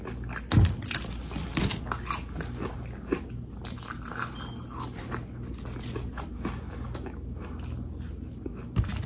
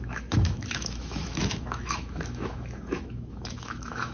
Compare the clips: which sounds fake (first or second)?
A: second